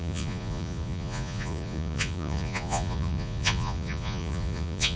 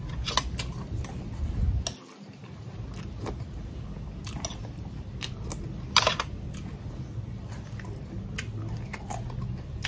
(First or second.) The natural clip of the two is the second